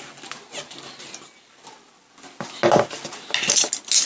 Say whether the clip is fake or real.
real